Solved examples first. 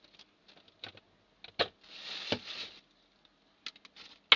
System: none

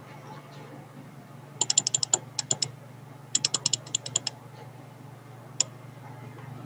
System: none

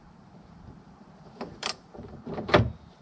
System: vocoder, BigVGAN v2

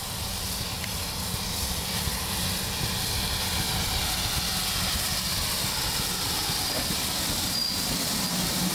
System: none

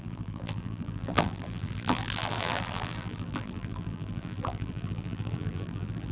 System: vocoder, BigVGAN v2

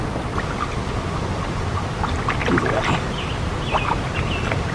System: none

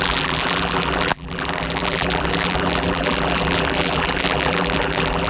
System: vocoder, BigVGAN v2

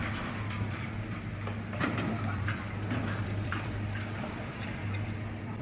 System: vocoder, BigVGAN v2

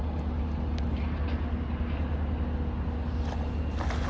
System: none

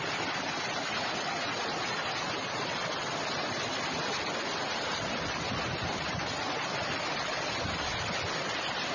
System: vocoder, BigVGAN v2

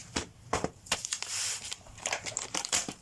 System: vocoder, BigVGAN v2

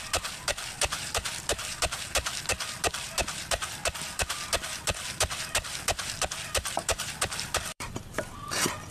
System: vocoder, BigVGAN v2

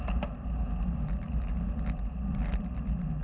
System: none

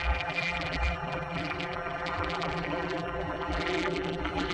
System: vocoder, BigVGAN v2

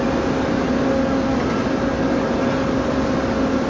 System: none